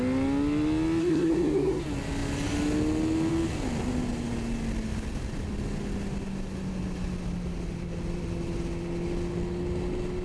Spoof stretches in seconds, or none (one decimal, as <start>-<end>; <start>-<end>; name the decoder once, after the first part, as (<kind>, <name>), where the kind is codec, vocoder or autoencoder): 1.0-1.8 (codec, SNAC)